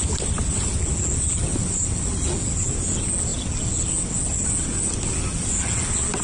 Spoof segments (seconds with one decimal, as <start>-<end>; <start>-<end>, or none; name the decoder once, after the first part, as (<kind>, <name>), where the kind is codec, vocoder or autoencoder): 0.0-0.7 (vocoder, BigVGAN v2)